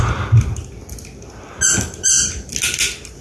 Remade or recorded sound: recorded